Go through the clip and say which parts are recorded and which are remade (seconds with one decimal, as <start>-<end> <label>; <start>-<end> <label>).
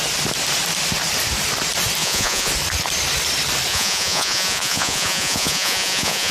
0.0-2.0 recorded; 2.0-2.5 remade; 2.5-3.7 recorded; 3.7-6.3 remade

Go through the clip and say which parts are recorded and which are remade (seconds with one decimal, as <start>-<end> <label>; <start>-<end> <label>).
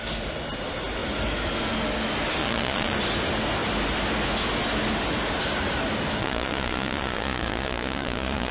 0.0-2.4 recorded; 2.4-3.0 remade; 3.0-6.2 recorded; 6.2-8.5 remade